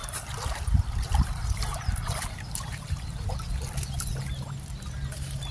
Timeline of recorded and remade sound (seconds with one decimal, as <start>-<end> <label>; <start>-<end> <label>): 0.0-3.3 remade; 3.3-5.5 recorded